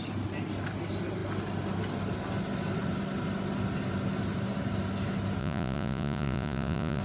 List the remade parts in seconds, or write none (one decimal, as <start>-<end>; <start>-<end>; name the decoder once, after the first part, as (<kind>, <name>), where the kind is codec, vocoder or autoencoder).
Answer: 5.4-7.0 (vocoder, Vocos)